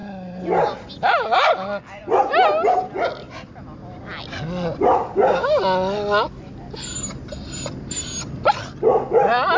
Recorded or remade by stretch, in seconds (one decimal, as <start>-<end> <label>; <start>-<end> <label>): 0.0-4.9 recorded; 4.9-5.6 remade; 5.6-9.6 recorded